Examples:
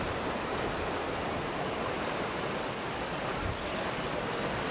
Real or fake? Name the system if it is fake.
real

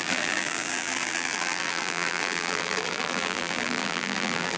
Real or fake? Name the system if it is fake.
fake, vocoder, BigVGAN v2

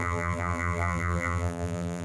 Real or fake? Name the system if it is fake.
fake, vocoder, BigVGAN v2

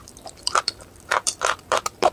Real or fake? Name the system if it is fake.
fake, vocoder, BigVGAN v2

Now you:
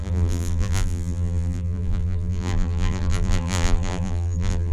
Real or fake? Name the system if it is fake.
fake, vocoder, BigVGAN v2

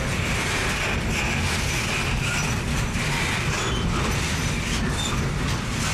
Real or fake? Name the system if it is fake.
real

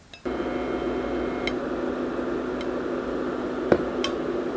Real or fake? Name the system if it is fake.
real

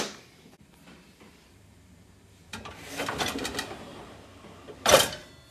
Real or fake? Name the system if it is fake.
fake, vocoder, BigVGAN v2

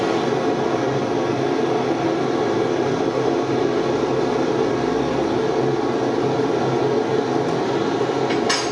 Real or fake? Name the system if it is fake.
real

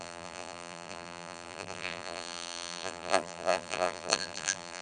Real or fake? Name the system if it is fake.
fake, vocoder, BigVGAN v2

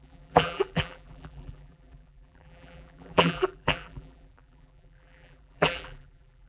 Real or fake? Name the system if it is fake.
fake, vocoder, BigVGAN v2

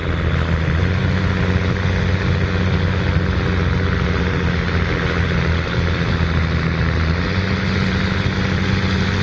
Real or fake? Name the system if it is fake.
real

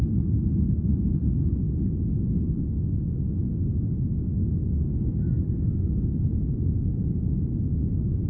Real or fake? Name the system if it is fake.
real